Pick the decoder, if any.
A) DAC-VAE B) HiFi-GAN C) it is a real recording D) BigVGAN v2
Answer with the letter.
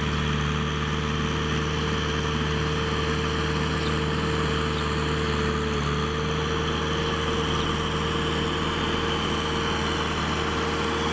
C